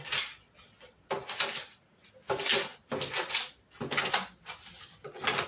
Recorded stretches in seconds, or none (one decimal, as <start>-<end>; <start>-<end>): 0.0-5.5

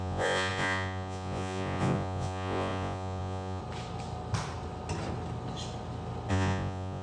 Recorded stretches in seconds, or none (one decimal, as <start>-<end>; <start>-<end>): 3.6-6.3

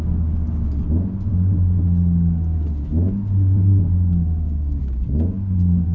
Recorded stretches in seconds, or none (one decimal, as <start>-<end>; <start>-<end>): 0.0-5.9

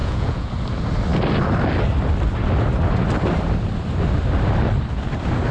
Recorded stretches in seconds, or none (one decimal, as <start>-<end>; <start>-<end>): 0.5-5.5

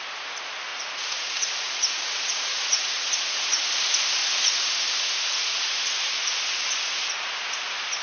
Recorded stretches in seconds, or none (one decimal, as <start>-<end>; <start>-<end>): 0.0-0.7; 3.6-4.2; 6.9-8.0